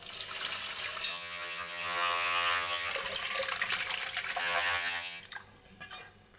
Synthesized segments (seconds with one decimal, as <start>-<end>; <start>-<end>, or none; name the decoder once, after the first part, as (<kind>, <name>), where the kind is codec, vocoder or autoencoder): 1.1-2.9 (vocoder, HiFi-GAN); 4.4-5.2

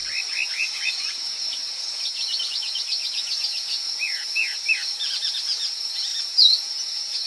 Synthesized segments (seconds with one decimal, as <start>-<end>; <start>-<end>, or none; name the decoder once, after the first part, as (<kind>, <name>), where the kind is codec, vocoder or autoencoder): 0.5-7.3 (vocoder, Vocos)

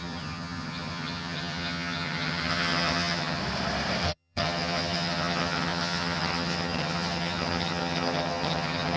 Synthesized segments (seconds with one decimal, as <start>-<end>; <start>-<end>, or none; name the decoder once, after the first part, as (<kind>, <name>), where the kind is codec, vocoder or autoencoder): 0.0-3.4 (vocoder, HiFi-GAN); 4.0-9.0

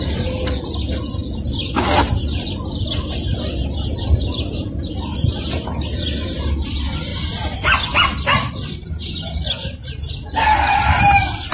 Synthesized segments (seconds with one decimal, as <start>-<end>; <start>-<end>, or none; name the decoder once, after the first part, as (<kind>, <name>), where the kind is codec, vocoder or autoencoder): 1.2-5.3 (vocoder, BigVGAN v2); 7.1-11.0